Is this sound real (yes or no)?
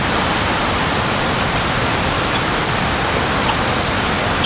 yes